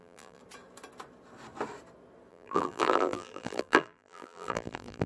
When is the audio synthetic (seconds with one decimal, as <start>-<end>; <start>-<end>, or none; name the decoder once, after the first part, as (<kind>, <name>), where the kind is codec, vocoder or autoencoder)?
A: 0.0-0.4 (vocoder, BigVGAN v2); 2.3-5.1

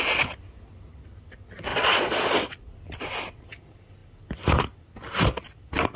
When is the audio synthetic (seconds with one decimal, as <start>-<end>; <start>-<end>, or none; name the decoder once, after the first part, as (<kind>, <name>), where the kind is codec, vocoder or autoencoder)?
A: 1.7-2.7 (vocoder, Vocos)

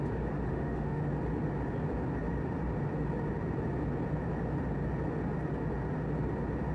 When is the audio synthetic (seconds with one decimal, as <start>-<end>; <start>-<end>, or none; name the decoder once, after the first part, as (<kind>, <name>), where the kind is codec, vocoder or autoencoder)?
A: 0.5-1.0 (autoencoder, DAC-VAE)

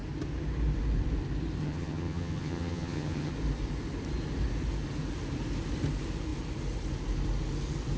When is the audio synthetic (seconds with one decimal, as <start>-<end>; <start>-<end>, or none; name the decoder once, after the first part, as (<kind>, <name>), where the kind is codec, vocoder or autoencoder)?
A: 1.6-3.3 (vocoder, HiFi-GAN)

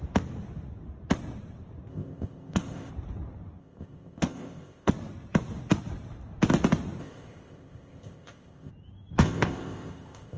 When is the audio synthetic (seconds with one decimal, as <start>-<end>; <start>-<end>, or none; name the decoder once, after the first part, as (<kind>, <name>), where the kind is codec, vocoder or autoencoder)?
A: 1.9-2.9 (codec, ZipCodec); 3.6-4.9; 7.0-8.7; 9.2-10.4

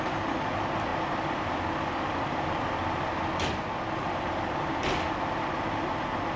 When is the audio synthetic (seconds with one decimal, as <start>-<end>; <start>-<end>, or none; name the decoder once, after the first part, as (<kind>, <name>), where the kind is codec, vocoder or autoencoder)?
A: none

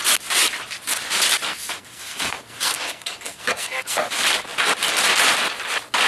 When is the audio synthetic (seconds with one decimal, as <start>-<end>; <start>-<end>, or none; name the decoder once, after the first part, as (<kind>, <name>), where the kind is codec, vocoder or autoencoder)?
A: 1.5-4.1 (codec, SNAC)